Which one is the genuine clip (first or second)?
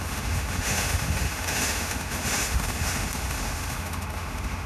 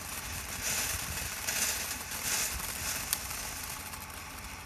second